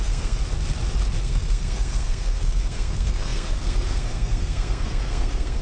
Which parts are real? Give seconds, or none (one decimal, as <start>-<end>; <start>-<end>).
0.4-1.2